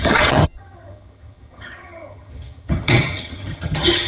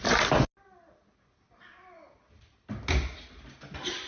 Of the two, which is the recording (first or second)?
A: second